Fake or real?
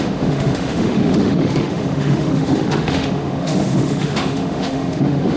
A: fake